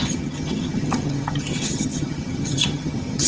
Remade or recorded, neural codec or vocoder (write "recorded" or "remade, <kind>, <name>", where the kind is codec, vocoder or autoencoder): remade, vocoder, HiFi-GAN